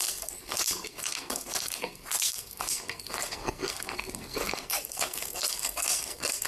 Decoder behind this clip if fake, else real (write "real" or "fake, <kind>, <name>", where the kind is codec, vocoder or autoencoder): fake, codec, SNAC